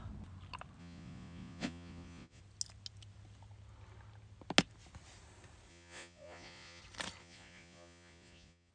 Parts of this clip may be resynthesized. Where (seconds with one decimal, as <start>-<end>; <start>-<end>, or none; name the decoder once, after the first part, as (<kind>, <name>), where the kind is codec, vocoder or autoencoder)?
0.8-2.4 (vocoder, Vocos); 5.7-6.8; 7.2-8.7